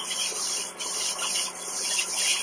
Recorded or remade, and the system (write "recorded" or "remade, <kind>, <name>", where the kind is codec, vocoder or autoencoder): remade, vocoder, BigVGAN v2